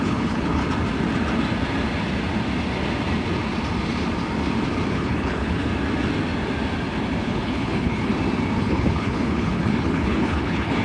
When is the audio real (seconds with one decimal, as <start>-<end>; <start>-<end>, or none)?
0.6-4.9; 5.7-7.2; 8.1-8.6